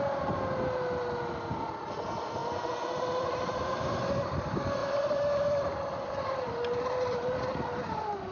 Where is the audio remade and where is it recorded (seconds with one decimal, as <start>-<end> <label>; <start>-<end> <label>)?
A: 0.0-2.4 recorded; 2.4-4.0 remade; 4.0-4.8 recorded; 4.8-7.4 remade; 7.4-8.3 recorded

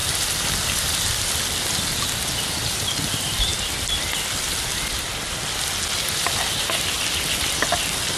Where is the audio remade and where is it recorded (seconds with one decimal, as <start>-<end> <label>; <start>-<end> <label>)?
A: 0.0-8.2 recorded